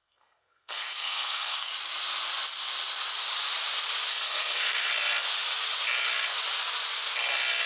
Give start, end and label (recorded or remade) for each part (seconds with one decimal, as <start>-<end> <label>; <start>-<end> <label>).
0.0-1.7 remade; 1.7-4.1 recorded; 4.1-4.9 remade; 4.9-7.7 recorded